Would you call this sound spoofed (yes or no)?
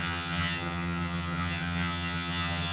yes